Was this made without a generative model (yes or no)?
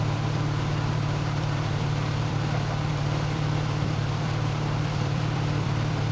no